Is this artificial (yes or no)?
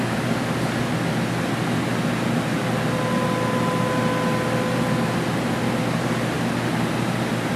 no